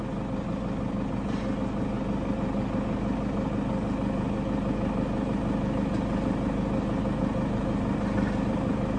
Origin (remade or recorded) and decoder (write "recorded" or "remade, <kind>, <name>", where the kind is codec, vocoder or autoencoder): recorded